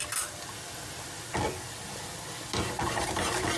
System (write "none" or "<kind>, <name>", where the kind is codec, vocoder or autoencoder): none